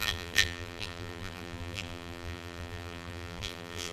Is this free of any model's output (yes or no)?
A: no